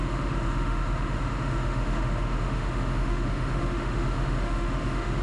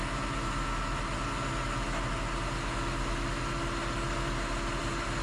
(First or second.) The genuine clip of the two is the second